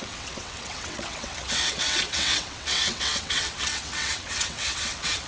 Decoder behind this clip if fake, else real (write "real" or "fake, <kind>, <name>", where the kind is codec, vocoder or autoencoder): fake, vocoder, WaveNeXt